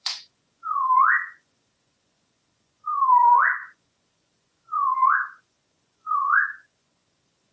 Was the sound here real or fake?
fake